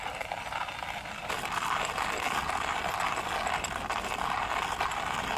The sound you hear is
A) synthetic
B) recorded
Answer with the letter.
B